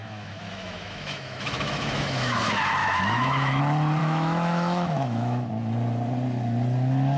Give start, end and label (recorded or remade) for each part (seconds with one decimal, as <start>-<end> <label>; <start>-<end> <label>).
0.0-2.4 remade; 2.4-2.8 recorded; 2.8-3.6 remade; 3.6-4.0 recorded; 4.0-5.5 remade; 5.5-7.2 recorded